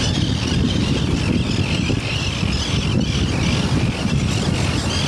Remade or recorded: recorded